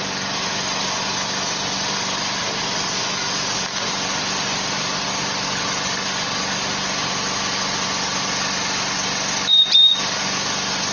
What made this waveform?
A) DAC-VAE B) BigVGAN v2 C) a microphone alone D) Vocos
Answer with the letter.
C